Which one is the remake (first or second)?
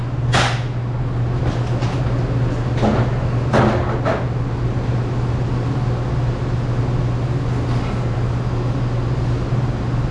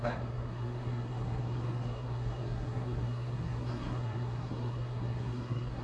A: second